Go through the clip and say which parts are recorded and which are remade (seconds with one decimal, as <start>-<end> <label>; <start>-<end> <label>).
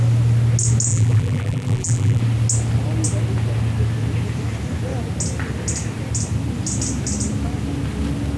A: 0.0-0.9 recorded; 0.9-2.2 remade; 2.2-8.4 recorded